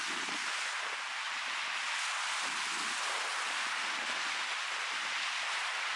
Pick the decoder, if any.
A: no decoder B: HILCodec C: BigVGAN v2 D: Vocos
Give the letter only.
A